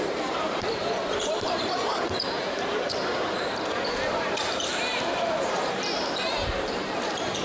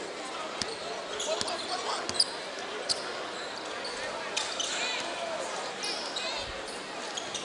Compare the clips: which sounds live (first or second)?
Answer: second